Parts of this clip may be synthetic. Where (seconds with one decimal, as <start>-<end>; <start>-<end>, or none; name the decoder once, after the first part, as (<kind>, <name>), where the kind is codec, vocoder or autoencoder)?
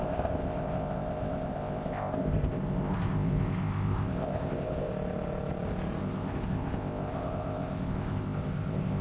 0.0-4.9 (codec, ZipCodec); 6.0-9.0